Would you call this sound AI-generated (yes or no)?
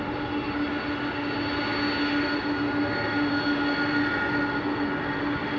no